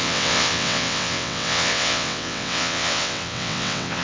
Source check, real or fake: fake